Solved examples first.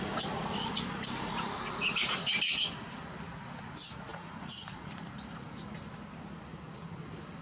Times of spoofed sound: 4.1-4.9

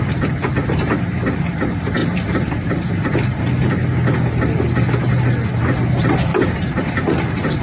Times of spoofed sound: 0.0-3.8; 5.6-7.6

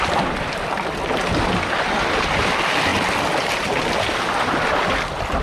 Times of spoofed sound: none

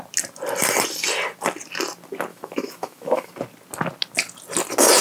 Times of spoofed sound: 2.3-3.3

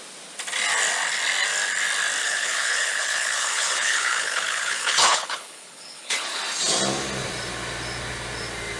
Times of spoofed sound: 2.2-6.4

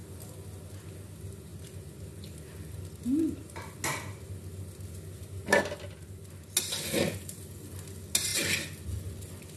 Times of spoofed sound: none

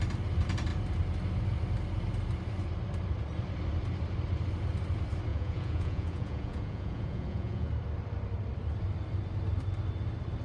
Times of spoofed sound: 5.3-7.7

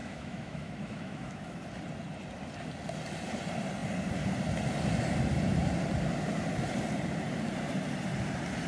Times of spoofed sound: 0.0-1.6